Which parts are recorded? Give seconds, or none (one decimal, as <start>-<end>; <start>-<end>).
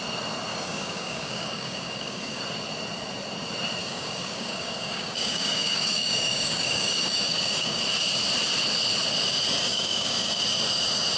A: 0.0-0.5; 2.4-3.8; 7.8-9.6; 10.4-11.2